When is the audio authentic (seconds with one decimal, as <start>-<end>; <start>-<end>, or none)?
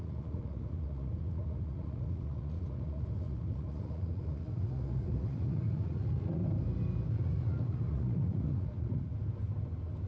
6.4-7.1; 9.1-10.1